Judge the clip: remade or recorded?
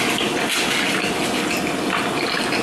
recorded